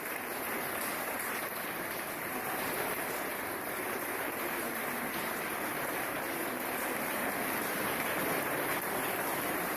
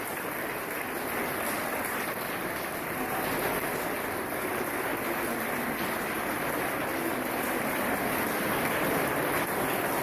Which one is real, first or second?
second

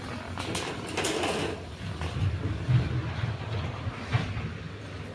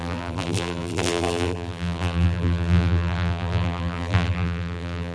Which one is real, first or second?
first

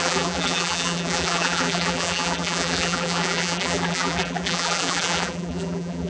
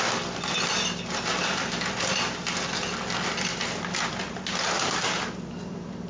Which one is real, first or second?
second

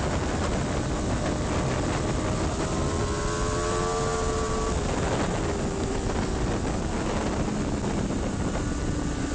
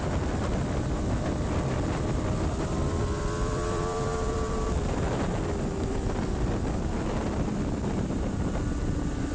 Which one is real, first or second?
first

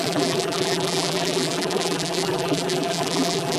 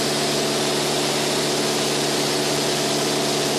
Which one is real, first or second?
second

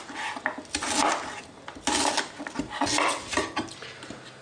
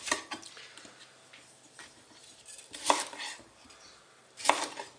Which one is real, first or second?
first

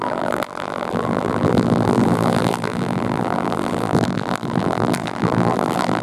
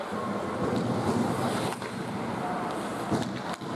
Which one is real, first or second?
second